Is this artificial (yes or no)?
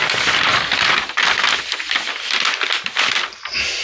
no